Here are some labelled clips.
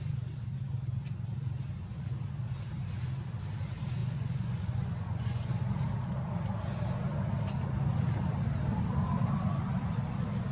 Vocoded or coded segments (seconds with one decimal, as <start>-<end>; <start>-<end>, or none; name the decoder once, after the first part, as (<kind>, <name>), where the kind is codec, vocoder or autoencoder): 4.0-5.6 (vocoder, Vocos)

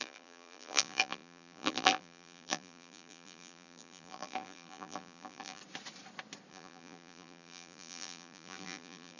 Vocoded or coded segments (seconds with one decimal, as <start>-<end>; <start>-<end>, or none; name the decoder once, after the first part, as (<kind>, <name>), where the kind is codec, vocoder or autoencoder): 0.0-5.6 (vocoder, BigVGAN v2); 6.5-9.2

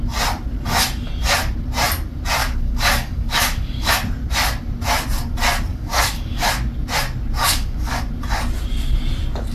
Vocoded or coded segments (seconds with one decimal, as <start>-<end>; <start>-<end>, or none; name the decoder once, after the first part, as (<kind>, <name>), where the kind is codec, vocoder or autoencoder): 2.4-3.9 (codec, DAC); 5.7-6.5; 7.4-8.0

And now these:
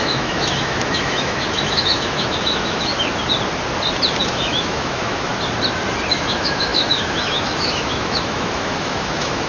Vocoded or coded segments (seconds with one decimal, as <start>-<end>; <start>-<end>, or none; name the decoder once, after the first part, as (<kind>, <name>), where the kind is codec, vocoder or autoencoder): 0.0-2.9 (autoencoder, DAC-VAE); 4.2-5.3; 6.1-9.5